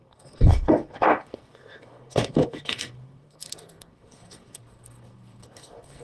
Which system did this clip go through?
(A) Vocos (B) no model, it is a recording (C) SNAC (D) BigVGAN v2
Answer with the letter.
C